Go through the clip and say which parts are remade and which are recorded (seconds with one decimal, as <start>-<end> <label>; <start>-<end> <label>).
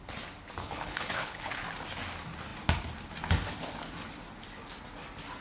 0.0-0.6 recorded; 0.6-1.6 remade; 1.6-5.4 recorded